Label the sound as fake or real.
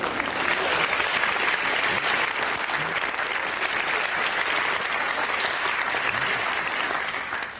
real